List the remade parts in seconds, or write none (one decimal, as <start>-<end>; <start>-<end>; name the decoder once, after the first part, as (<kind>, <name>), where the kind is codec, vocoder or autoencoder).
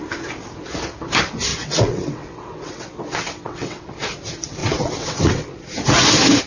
1.5-3.9 (vocoder, WaveNeXt); 4.6-5.5